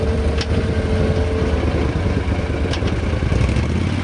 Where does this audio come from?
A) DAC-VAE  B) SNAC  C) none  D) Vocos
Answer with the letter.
C